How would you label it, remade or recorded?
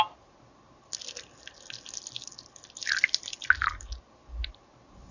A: recorded